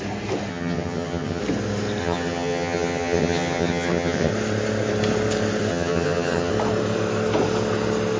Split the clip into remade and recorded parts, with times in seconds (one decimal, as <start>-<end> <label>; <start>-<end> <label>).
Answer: 0.0-0.5 recorded; 0.5-1.4 remade; 1.4-2.0 recorded; 2.0-4.3 remade; 4.3-5.7 recorded; 5.7-6.5 remade; 6.5-8.2 recorded